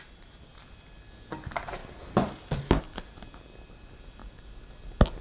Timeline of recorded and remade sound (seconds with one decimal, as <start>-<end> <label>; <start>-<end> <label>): 0.0-4.2 recorded; 4.2-4.7 remade; 4.7-5.2 recorded